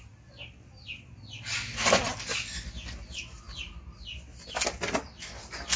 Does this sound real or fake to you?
real